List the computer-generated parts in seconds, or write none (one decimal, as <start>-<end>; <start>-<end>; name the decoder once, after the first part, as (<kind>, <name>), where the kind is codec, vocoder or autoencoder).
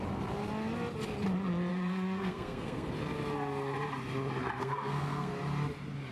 1.7-2.9 (codec, SNAC); 4.6-5.3